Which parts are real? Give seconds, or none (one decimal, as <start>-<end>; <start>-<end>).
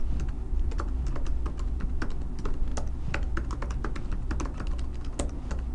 0.0-5.7